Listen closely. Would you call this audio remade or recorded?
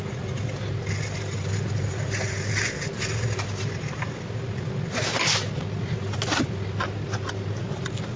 recorded